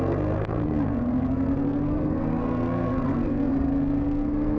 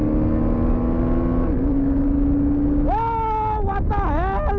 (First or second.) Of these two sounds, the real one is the second